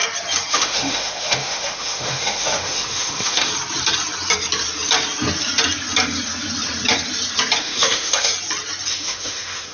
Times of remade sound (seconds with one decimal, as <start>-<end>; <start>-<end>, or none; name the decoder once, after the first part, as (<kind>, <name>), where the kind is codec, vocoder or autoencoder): 0.5-3.5 (autoencoder, DAC-VAE); 7.6-8.3; 8.9-9.7